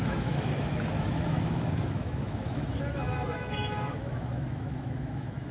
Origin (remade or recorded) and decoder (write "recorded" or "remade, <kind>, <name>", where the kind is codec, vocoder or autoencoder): remade, autoencoder, DAC-VAE